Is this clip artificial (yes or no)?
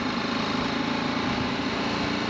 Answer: no